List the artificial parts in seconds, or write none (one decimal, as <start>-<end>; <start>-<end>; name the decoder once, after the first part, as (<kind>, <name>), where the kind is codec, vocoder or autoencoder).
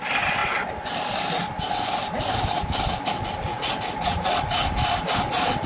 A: 3.5-4.3 (vocoder, Vocos)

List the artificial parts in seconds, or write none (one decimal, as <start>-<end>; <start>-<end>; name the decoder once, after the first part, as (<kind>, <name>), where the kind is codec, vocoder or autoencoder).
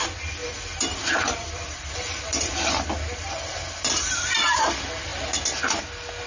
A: 0.4-4.2 (vocoder, BigVGAN v2)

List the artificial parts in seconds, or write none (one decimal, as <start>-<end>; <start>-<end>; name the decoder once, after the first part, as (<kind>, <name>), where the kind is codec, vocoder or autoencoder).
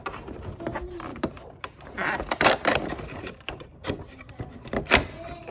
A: 1.1-4.4 (vocoder, BigVGAN v2)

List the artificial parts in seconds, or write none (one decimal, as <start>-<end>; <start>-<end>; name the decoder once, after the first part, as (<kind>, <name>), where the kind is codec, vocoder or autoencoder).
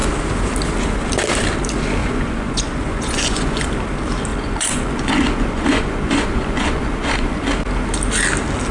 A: 2.0-3.7 (vocoder, Vocos); 4.3-7.4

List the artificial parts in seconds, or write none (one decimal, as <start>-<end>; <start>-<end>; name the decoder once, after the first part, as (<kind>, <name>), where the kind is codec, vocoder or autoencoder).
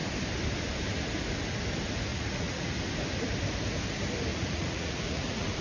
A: 2.1-2.7 (vocoder, Vocos); 4.3-5.6